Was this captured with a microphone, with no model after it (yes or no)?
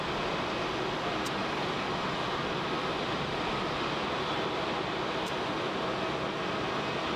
yes